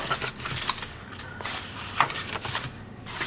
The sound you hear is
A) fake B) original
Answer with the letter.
A